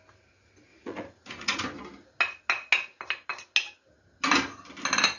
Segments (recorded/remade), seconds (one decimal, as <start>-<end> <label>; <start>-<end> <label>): 0.0-0.7 recorded; 0.7-1.6 remade; 1.6-5.2 recorded

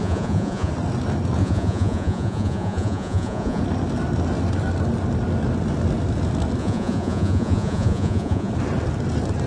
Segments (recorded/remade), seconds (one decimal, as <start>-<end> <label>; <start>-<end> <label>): 0.0-0.7 remade; 0.7-1.4 recorded; 1.4-3.6 remade; 3.6-6.6 recorded; 6.6-8.5 remade; 8.5-9.5 recorded

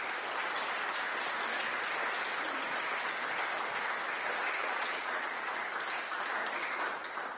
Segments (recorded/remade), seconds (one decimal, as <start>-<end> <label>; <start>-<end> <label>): 0.0-4.6 recorded; 4.6-5.6 remade; 5.6-7.4 recorded

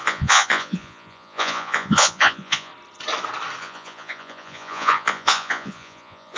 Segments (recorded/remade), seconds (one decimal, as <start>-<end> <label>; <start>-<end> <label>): 0.0-2.7 remade; 2.7-3.6 recorded; 3.6-6.4 remade